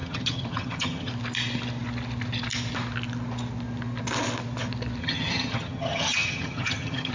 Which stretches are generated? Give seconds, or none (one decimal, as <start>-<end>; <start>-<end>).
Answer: 0.0-1.1; 5.0-7.1